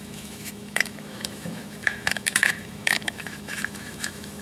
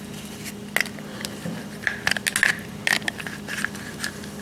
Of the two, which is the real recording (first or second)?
second